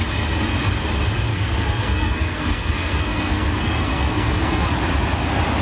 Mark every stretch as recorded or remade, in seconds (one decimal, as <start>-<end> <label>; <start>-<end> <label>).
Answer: 0.0-1.3 recorded; 1.3-4.7 remade; 4.7-5.6 recorded